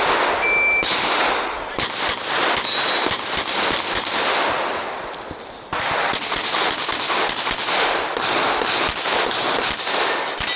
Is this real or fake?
real